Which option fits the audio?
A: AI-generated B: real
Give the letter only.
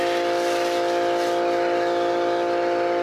B